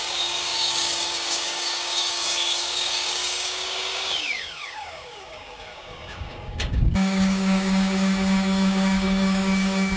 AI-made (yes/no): yes